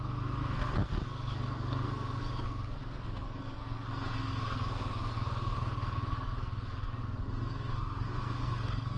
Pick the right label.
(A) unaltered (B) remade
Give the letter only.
B